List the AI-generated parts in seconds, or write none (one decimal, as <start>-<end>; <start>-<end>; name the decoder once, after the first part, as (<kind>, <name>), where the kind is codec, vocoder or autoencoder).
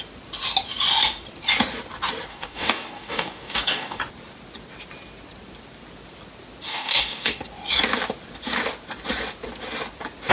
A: 2.3-4.0 (codec, DAC); 6.7-7.4